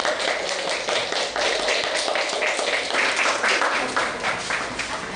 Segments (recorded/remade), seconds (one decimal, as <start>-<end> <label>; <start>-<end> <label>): 0.0-5.2 recorded